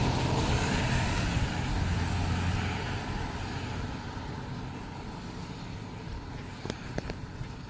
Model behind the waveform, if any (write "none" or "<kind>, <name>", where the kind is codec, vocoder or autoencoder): none